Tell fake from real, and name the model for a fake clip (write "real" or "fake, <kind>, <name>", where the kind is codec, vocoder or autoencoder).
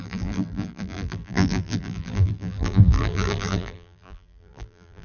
fake, vocoder, BigVGAN v2